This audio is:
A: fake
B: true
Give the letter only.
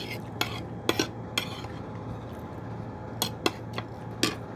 B